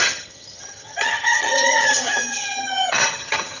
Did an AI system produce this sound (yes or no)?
yes